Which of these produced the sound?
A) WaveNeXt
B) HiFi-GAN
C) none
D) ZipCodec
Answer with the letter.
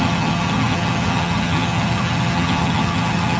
B